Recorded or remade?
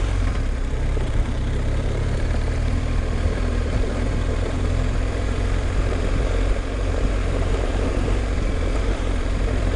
remade